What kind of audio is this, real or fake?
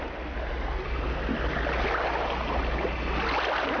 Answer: real